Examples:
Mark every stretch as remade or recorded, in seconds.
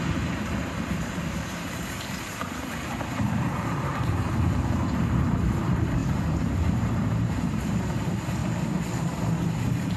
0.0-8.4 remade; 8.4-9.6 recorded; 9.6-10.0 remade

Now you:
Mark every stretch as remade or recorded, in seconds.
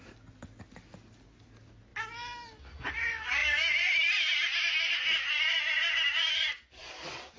0.0-7.4 recorded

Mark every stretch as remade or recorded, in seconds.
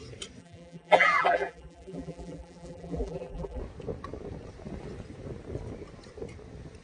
0.0-0.4 recorded; 0.4-3.6 remade; 3.6-6.8 recorded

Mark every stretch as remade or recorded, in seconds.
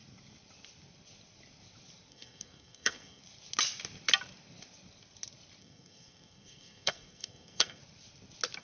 0.0-2.1 recorded; 2.1-3.2 remade; 3.2-5.6 recorded; 5.6-7.8 remade; 7.8-8.6 recorded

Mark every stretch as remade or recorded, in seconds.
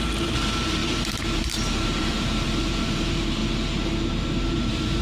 0.0-3.4 remade; 3.4-4.1 recorded; 4.1-5.0 remade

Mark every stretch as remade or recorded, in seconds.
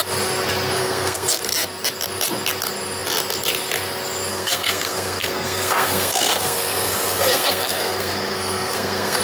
0.0-0.8 recorded; 0.8-1.4 remade; 1.4-4.3 recorded; 4.3-9.2 remade